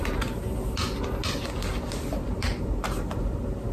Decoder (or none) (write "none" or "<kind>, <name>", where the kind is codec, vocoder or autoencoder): none